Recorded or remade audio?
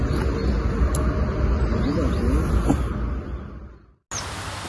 recorded